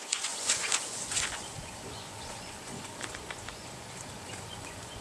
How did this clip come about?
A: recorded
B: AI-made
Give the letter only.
B